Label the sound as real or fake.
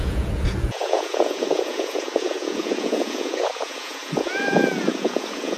fake